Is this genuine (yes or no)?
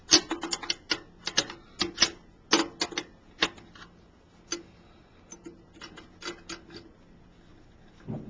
yes